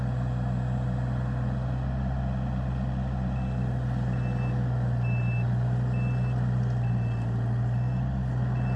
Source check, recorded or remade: recorded